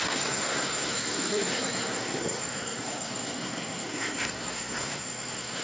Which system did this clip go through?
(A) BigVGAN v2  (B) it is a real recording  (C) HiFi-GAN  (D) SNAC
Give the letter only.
D